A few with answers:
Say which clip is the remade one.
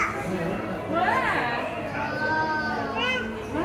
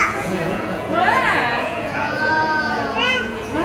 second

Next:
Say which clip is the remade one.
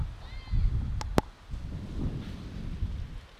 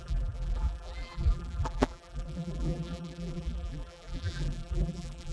second